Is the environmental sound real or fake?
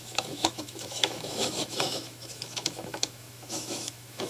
fake